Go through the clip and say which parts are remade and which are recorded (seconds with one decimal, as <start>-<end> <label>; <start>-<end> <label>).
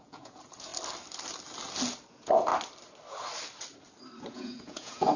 0.0-0.7 remade; 0.7-2.1 recorded; 2.1-2.5 remade; 2.5-4.3 recorded; 4.3-5.2 remade